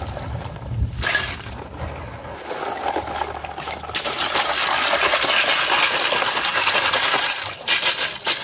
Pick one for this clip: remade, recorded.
recorded